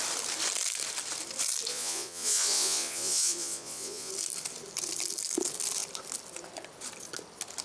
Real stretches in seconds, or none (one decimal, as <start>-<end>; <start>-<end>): 0.0-1.7; 4.1-7.6